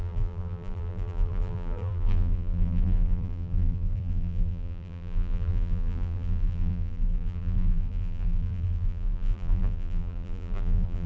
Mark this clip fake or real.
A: fake